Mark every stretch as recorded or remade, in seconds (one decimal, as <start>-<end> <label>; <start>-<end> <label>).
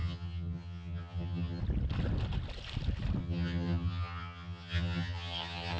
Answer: 0.0-1.6 remade; 1.6-3.2 recorded; 3.2-5.8 remade